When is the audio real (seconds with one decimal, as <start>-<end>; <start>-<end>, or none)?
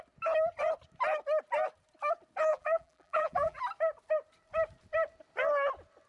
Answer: 0.0-2.5; 3.6-6.1